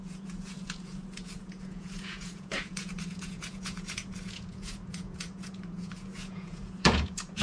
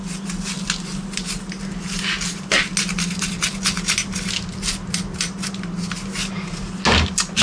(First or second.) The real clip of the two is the second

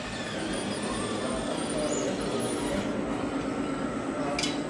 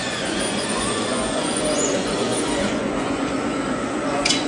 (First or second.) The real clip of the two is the first